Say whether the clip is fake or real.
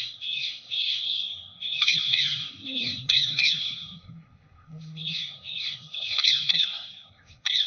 fake